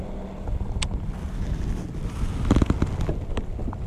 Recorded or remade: recorded